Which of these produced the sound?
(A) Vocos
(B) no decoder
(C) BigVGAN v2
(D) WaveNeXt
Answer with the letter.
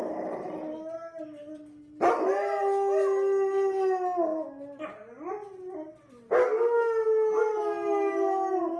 B